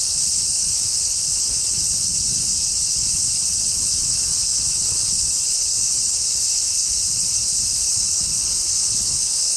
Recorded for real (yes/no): no